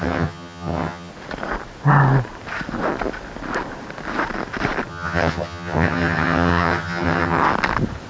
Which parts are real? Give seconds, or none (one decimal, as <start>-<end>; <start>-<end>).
1.1-4.9; 7.4-8.1